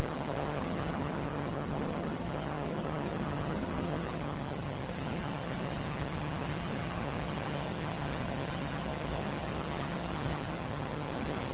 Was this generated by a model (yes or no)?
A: yes